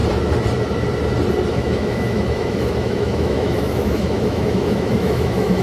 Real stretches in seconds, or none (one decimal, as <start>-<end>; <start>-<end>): 0.0-1.5